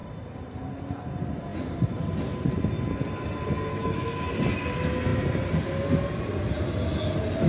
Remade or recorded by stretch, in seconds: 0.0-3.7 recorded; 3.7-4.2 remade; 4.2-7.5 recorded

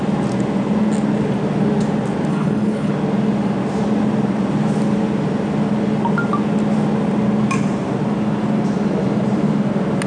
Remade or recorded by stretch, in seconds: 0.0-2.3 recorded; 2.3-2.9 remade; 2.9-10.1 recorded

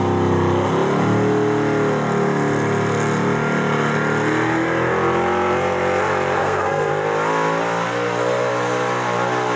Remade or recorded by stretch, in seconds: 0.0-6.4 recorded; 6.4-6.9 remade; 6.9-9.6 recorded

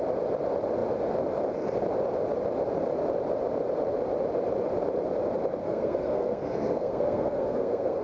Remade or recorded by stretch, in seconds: 0.0-5.6 recorded; 5.6-8.0 remade

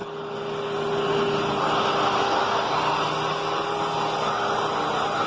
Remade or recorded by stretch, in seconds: 0.0-5.3 recorded

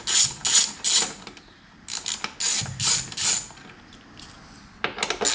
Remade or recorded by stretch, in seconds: 0.0-5.3 recorded